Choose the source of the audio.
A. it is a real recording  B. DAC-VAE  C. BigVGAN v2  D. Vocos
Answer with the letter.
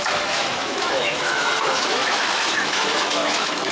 B